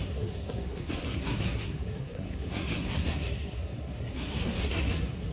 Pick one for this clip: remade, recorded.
remade